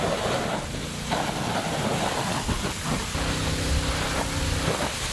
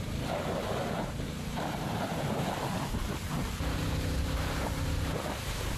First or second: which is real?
first